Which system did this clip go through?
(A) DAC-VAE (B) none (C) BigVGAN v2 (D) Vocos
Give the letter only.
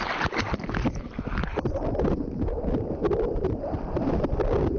B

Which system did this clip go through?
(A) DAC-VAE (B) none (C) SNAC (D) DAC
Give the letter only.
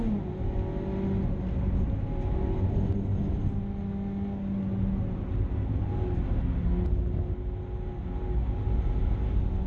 B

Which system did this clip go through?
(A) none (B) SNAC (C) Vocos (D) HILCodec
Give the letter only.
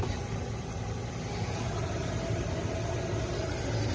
A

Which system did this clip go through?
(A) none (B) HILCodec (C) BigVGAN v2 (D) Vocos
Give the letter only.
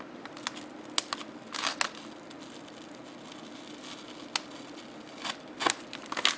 A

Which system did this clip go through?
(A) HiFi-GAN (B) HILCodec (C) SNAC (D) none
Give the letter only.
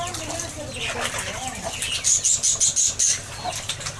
D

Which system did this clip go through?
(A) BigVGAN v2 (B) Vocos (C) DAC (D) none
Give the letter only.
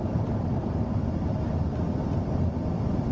A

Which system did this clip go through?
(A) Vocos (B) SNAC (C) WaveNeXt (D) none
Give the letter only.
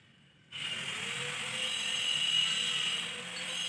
D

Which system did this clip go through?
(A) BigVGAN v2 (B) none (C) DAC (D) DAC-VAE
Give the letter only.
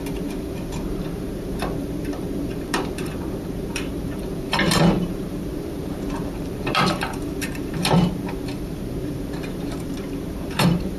A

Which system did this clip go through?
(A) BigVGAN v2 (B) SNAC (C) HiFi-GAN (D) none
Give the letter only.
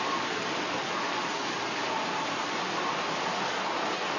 D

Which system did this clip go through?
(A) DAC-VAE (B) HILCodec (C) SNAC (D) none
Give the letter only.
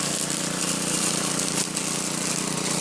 D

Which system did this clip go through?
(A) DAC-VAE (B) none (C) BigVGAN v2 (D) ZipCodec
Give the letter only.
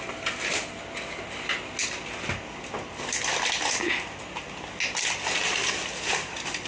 B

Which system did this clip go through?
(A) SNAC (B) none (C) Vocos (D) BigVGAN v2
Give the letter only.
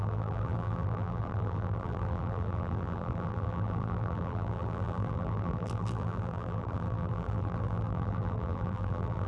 D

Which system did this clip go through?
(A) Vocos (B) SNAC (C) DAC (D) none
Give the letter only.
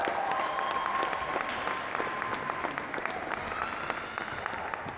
D